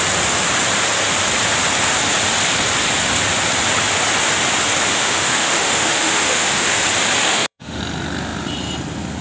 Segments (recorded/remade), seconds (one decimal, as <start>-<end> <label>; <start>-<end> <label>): 0.0-4.9 recorded; 4.9-6.8 remade; 6.8-7.3 recorded; 7.3-7.8 remade; 7.8-9.2 recorded